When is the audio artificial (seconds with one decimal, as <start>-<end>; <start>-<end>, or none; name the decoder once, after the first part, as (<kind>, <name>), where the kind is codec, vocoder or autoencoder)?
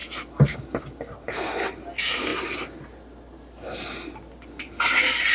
none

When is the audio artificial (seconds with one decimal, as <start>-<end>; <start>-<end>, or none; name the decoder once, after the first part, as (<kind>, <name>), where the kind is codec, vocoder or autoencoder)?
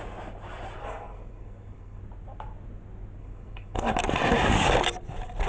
0.8-2.0 (codec, SNAC); 3.2-3.9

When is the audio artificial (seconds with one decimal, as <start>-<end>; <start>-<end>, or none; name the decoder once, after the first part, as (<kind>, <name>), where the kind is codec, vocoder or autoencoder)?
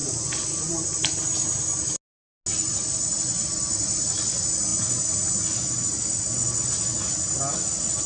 none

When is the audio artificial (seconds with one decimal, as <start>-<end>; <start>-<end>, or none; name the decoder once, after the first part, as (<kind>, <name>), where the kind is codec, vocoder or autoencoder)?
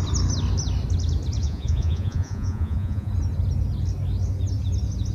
1.4-3.1 (vocoder, Vocos)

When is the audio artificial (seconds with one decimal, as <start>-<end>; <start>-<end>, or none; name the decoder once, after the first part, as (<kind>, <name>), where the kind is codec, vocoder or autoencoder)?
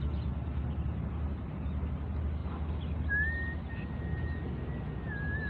none